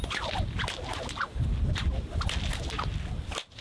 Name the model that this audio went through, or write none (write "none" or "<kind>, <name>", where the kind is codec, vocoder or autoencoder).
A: none